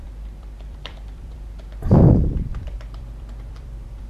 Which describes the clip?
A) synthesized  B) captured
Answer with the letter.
A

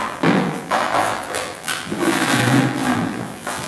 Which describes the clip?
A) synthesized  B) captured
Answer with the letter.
A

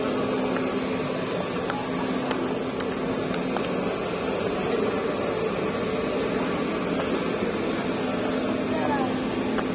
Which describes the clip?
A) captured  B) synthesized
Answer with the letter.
A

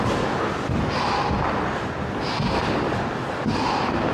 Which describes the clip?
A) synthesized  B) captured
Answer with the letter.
B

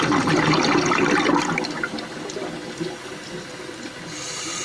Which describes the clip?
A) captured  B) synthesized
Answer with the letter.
A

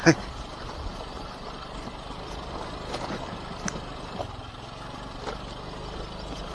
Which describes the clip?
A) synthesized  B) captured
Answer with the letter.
B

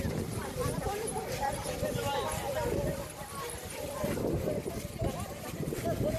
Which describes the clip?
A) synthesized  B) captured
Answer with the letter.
B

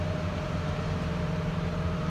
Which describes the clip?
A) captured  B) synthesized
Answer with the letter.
B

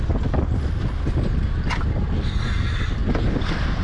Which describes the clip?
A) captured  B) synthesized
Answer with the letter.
A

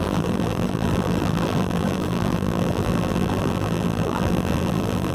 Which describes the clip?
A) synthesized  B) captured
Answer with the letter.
A